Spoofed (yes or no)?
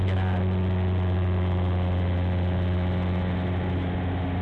no